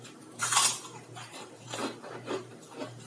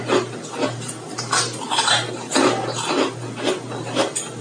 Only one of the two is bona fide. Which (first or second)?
second